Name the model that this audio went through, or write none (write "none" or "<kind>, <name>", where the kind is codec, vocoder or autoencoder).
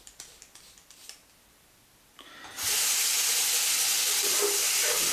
none